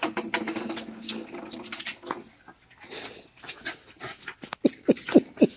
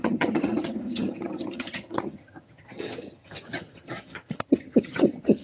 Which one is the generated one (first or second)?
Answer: second